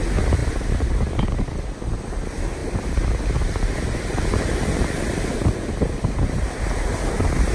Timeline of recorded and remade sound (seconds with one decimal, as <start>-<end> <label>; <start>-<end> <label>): 0.0-7.5 recorded